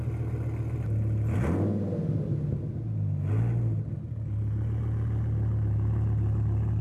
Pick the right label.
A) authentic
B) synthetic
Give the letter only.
A